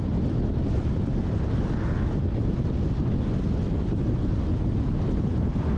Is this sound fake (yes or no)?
no